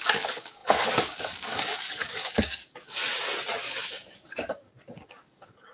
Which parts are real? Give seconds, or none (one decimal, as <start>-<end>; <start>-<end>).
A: 3.0-3.6